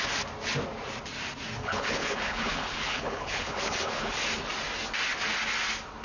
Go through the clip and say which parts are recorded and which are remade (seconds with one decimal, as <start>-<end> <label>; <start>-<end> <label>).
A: 0.0-1.6 recorded; 1.6-4.2 remade; 4.2-6.0 recorded